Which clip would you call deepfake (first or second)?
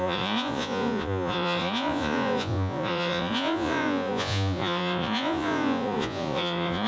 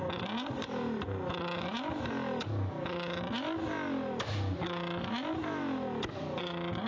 first